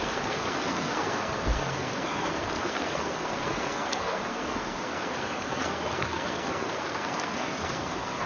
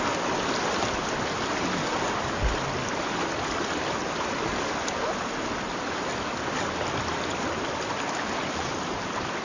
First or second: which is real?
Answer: second